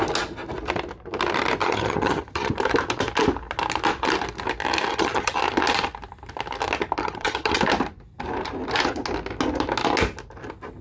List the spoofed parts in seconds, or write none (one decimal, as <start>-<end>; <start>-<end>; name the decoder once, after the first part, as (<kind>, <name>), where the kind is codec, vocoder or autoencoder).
1.6-2.5 (vocoder, HiFi-GAN); 4.9-5.4; 7.0-7.6

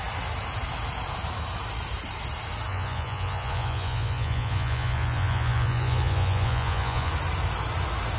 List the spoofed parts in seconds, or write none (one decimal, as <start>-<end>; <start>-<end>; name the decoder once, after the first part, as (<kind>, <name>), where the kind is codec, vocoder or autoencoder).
2.7-7.1 (vocoder, Vocos)

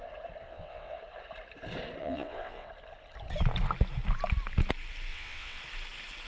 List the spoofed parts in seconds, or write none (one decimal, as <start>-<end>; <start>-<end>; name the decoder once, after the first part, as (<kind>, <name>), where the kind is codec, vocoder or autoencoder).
0.4-1.0 (vocoder, WaveNeXt); 2.0-2.7; 5.1-5.6

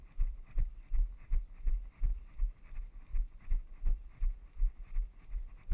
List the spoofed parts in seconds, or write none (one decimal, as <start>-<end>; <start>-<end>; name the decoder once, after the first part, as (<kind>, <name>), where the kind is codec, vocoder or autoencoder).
3.1-3.7 (vocoder, BigVGAN v2)

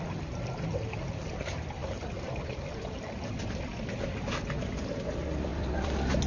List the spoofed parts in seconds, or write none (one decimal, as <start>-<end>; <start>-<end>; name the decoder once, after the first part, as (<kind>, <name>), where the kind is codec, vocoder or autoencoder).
none